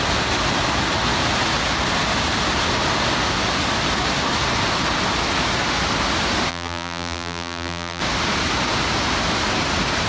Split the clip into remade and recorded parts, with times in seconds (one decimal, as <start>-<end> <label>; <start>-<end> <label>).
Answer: 0.0-6.5 recorded; 6.5-8.0 remade; 8.0-10.1 recorded